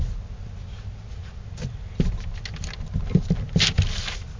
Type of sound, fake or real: real